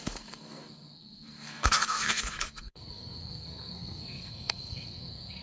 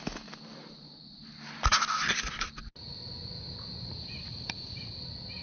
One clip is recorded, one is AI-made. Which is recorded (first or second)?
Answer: second